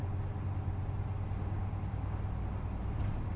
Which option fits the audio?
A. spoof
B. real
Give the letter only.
B